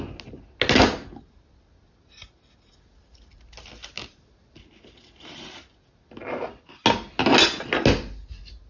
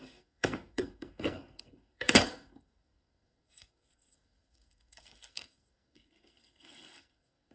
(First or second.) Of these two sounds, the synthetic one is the second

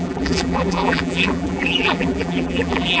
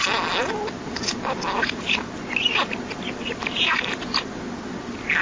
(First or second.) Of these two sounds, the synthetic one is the first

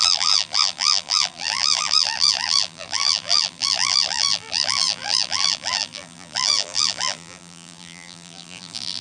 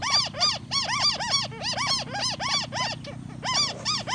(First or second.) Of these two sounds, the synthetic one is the first